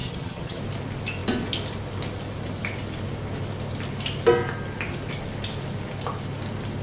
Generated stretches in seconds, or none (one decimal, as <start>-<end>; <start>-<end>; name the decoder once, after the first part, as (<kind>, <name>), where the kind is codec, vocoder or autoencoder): 0.0-0.6 (vocoder, HiFi-GAN)